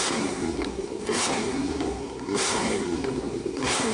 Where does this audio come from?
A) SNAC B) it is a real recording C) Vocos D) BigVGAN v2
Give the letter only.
A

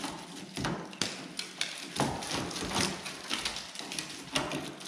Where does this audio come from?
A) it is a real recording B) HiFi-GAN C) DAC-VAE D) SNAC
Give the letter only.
A